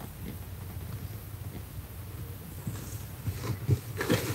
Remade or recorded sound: recorded